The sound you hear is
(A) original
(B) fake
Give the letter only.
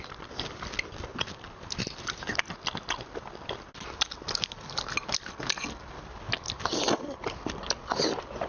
A